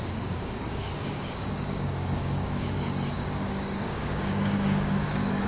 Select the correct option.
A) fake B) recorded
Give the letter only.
A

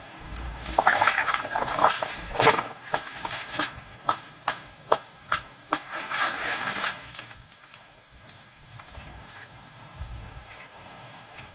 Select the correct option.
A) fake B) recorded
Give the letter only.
A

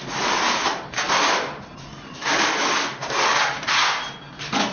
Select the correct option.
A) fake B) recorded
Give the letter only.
B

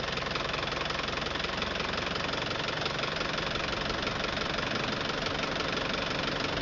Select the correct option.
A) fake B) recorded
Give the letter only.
B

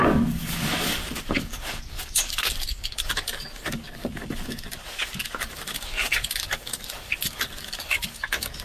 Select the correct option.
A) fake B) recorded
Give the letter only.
A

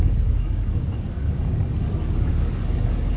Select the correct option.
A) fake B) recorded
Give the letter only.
A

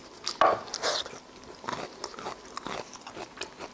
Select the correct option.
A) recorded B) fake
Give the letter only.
A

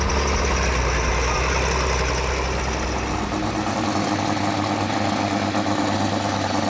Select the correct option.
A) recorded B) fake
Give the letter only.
A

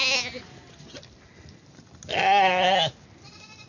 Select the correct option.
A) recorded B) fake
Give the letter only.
A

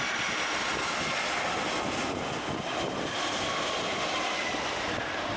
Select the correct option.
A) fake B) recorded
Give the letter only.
B